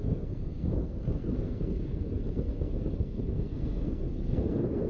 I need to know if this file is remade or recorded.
remade